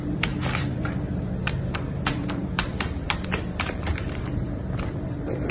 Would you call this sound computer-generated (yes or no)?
yes